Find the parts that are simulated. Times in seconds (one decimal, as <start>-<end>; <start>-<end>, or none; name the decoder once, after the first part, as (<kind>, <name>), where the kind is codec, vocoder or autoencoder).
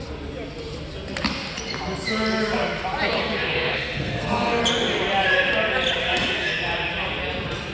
3.2-4.6 (codec, SNAC); 6.0-6.6